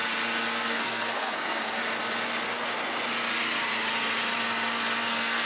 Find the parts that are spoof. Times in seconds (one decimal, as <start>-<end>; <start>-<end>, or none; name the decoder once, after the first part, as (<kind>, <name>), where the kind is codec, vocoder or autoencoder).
0.7-1.8 (codec, SNAC); 5.1-5.5